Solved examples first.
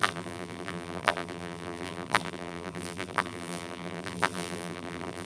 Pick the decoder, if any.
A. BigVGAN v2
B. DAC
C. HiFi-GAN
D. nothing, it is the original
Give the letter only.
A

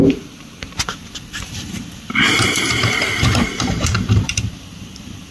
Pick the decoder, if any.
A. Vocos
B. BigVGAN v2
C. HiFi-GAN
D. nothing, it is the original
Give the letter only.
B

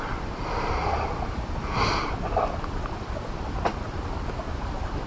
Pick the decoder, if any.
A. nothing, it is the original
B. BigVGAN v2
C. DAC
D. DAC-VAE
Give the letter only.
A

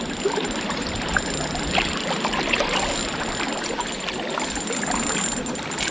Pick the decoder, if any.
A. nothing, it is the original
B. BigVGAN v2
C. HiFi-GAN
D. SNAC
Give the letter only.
A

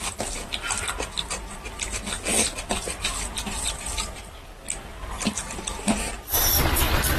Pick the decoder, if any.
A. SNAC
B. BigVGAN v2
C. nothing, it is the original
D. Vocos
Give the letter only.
B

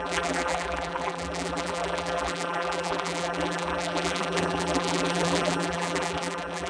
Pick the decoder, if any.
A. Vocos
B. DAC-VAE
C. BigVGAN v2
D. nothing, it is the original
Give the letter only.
C